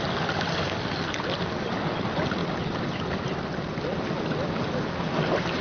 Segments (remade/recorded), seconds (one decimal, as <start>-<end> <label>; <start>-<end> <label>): 0.0-0.5 recorded; 0.5-1.1 remade; 1.1-5.6 recorded